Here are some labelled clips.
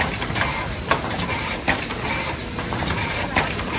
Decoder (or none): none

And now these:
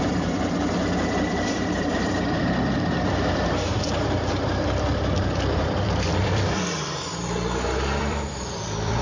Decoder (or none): vocoder, BigVGAN v2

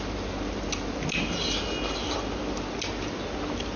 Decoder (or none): none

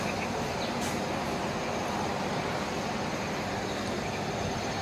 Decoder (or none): none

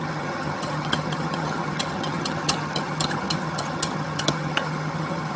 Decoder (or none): vocoder, HiFi-GAN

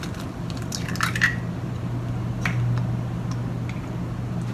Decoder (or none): none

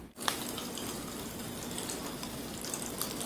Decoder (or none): none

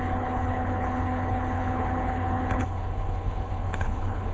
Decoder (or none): codec, HILCodec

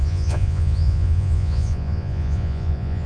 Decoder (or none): vocoder, Vocos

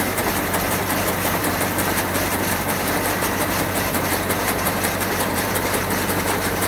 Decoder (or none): vocoder, BigVGAN v2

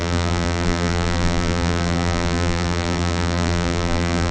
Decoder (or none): vocoder, BigVGAN v2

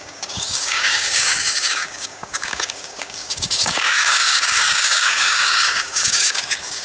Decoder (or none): codec, DAC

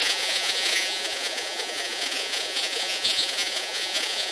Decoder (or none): vocoder, Vocos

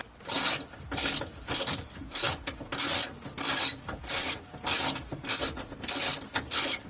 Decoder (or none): none